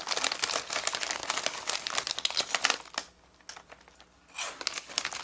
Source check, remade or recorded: recorded